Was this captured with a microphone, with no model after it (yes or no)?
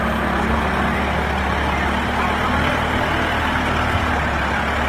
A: yes